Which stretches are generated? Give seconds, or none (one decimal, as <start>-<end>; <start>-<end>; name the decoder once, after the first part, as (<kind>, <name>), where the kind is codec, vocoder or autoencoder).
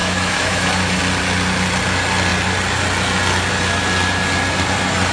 0.0-1.0 (autoencoder, DAC-VAE)